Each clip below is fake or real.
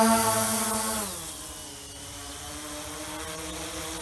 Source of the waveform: real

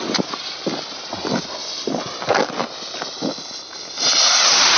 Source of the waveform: real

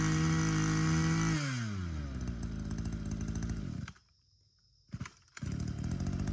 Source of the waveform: real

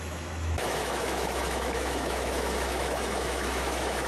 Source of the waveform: fake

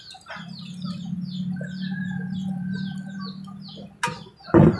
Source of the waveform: real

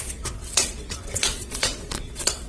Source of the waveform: fake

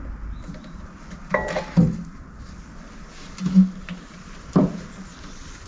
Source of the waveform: real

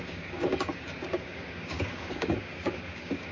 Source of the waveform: fake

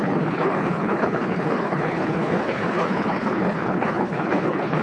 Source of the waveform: fake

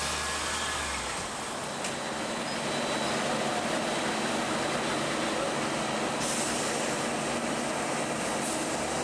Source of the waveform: real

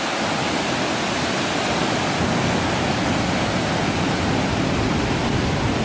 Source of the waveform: real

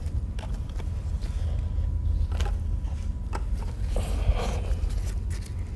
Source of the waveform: real